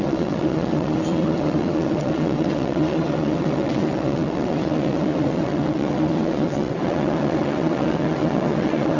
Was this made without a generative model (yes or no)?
no